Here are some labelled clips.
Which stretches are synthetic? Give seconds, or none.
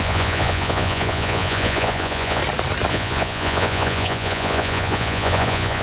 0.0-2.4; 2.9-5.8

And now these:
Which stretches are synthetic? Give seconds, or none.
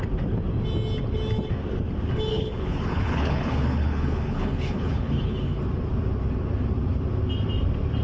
2.3-5.6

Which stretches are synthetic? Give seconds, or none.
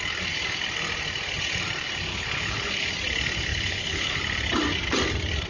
2.1-2.9; 3.5-4.2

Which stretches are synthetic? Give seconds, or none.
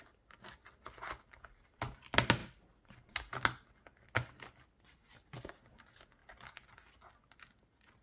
none